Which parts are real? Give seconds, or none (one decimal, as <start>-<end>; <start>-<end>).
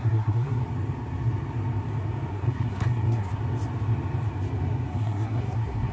0.6-2.3; 3.4-4.9